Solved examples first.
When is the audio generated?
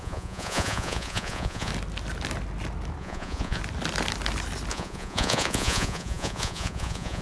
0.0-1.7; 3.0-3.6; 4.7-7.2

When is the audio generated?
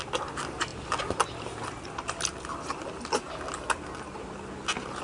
none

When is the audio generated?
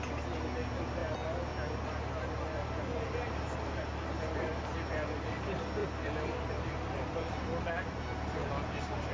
none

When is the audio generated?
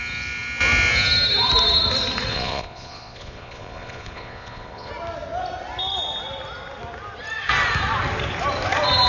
2.3-4.9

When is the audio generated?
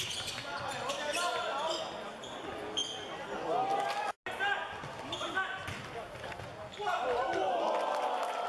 none